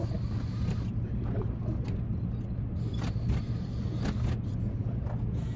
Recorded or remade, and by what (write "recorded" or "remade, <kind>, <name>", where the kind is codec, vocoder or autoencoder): recorded